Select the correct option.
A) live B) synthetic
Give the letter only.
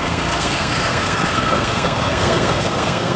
B